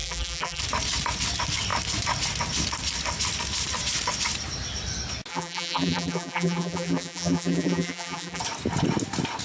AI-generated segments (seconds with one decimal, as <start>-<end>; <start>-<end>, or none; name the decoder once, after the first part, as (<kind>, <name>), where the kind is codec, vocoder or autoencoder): 0.0-0.6 (vocoder, BigVGAN v2); 5.3-8.4